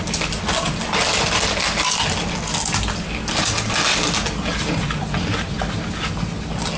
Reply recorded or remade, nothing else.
recorded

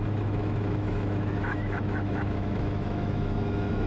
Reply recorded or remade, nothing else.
remade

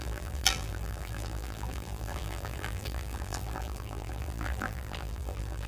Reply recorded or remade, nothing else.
remade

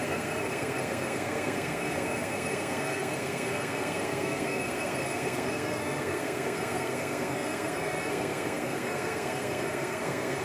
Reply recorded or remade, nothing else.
remade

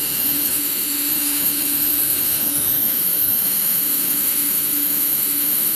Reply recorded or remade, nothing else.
remade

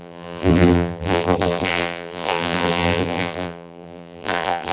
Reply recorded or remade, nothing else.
remade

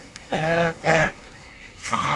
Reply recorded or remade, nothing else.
remade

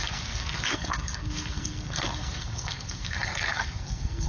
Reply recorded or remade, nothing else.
remade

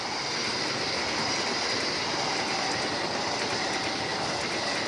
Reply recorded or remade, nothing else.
recorded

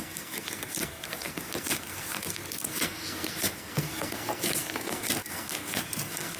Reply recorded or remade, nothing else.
remade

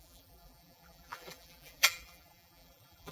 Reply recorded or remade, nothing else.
remade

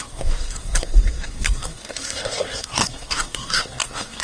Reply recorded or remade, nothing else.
remade